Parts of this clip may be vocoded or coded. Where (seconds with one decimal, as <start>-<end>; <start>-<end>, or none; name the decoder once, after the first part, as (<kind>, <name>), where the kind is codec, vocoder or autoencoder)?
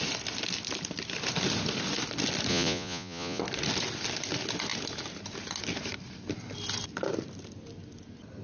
2.5-3.4 (vocoder, Vocos)